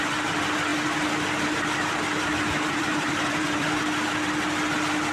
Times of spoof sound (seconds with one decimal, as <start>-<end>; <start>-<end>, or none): 0.7-3.8